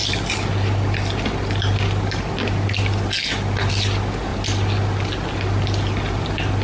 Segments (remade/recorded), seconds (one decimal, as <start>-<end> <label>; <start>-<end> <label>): 0.0-6.6 recorded